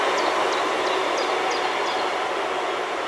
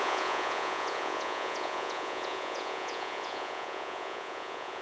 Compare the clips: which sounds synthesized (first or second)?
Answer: second